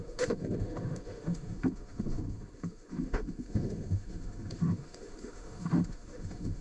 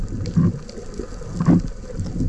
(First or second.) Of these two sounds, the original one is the second